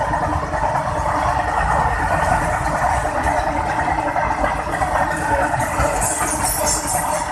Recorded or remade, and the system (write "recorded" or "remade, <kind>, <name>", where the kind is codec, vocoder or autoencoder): recorded